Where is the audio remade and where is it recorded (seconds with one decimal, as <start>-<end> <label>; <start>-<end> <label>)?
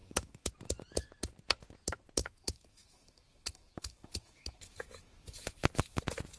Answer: 0.0-0.5 remade; 0.5-2.2 recorded; 2.2-6.0 remade; 6.0-6.4 recorded